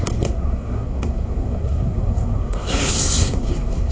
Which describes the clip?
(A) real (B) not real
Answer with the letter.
B